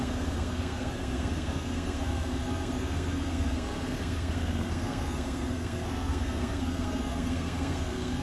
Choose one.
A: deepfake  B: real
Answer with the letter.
A